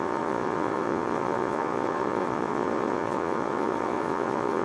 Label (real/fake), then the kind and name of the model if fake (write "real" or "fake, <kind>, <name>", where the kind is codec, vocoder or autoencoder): fake, vocoder, Vocos